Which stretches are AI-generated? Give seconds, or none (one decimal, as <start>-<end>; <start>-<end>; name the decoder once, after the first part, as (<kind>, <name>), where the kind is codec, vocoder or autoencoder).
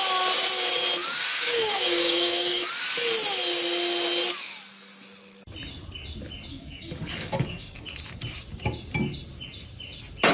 1.0-2.7 (codec, DAC); 6.5-8.0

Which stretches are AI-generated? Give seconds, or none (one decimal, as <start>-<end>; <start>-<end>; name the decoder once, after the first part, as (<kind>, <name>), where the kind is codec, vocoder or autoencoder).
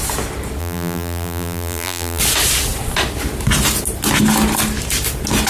0.6-2.2 (vocoder, BigVGAN v2)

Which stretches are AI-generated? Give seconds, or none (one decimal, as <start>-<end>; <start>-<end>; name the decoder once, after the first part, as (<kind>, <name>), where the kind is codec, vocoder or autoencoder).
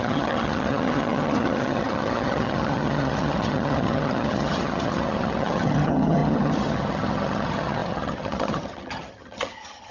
0.0-9.9 (vocoder, HiFi-GAN)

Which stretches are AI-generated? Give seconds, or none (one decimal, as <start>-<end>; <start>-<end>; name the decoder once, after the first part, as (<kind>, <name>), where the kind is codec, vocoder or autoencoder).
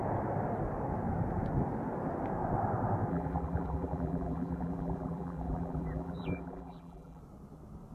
3.1-7.2 (vocoder, BigVGAN v2)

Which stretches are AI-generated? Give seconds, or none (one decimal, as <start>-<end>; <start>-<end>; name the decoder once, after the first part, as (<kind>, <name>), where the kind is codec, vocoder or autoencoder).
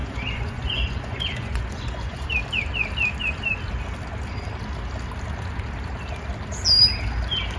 0.0-2.3 (vocoder, Vocos)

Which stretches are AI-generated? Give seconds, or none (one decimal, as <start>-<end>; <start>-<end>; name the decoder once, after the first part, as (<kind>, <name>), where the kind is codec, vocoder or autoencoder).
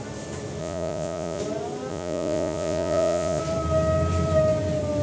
0.6-1.4 (vocoder, Vocos); 1.9-3.4